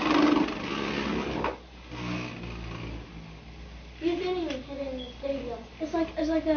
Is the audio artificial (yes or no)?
no